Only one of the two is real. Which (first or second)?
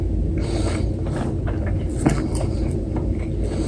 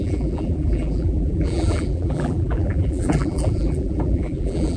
first